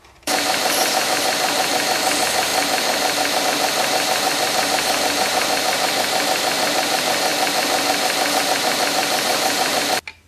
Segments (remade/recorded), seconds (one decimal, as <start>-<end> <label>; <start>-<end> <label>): 0.0-2.5 remade; 2.5-3.4 recorded; 3.4-7.3 remade; 7.3-8.4 recorded; 8.4-10.3 remade